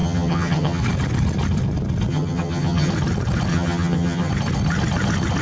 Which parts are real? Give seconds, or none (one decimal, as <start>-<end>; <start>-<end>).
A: 0.8-2.1; 2.9-3.5; 4.3-5.4